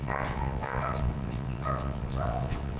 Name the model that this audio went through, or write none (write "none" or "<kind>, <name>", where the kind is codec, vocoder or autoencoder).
vocoder, WaveNeXt